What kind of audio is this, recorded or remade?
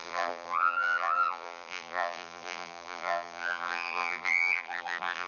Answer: remade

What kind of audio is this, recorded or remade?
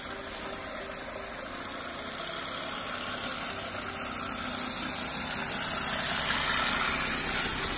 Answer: recorded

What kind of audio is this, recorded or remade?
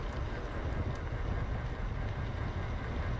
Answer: recorded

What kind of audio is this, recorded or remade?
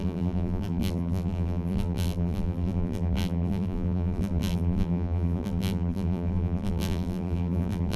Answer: remade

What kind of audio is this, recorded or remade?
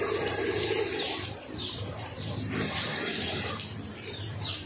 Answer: remade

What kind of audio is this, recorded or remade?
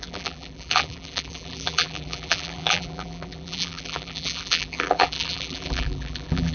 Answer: remade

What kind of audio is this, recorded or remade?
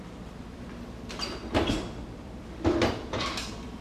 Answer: remade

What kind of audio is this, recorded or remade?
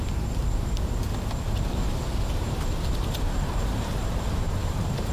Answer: remade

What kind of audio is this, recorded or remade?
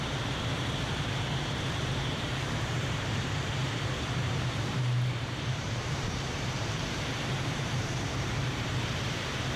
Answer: remade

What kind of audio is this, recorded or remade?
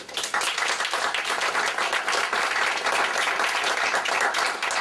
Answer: recorded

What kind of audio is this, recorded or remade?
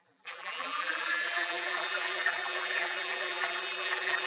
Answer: remade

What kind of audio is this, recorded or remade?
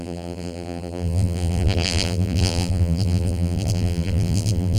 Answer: remade